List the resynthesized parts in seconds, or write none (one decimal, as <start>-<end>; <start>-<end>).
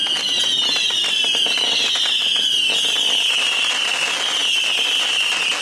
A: none